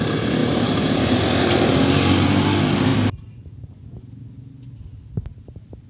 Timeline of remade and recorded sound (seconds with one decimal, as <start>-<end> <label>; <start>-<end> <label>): 0.0-0.4 recorded; 0.4-1.7 remade; 1.7-2.9 recorded; 2.9-3.7 remade; 3.7-5.9 recorded